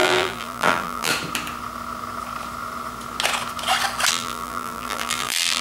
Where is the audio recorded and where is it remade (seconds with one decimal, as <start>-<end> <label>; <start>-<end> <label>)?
0.0-1.1 remade; 1.1-4.1 recorded; 4.1-5.6 remade